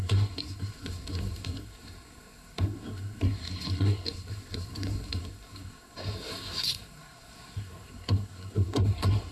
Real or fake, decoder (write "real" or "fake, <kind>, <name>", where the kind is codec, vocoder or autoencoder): fake, codec, SNAC